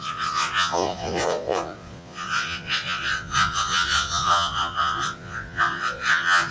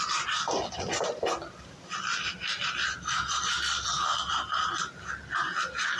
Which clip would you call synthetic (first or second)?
first